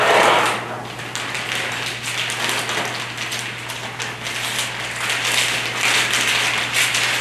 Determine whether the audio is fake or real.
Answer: real